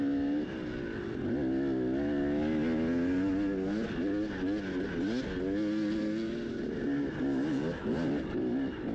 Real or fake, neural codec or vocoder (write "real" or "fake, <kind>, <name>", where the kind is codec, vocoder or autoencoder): real